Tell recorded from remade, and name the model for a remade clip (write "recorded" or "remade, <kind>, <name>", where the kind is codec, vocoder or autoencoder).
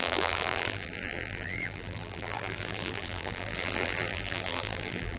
remade, vocoder, BigVGAN v2